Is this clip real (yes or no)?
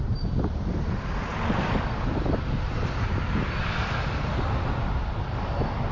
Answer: no